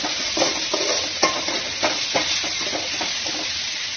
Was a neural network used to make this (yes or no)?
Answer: no